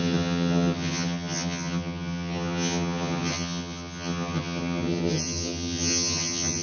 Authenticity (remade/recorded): remade